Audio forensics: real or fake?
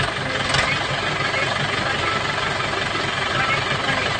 fake